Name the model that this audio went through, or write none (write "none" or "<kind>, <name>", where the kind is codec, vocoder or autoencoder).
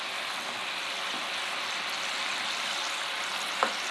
none